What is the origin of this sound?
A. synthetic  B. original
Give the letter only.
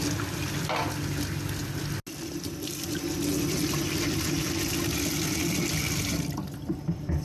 B